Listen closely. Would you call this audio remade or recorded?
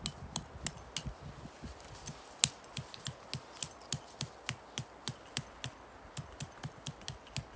recorded